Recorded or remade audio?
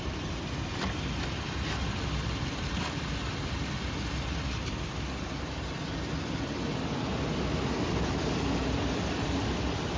recorded